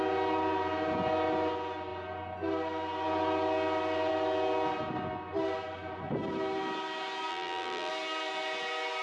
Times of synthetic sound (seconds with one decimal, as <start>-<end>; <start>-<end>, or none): 7.3-7.9